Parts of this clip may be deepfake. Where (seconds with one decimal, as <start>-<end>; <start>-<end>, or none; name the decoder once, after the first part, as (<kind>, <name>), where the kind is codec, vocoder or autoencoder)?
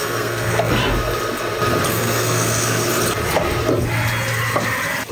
0.0-0.8 (codec, SNAC); 1.9-2.9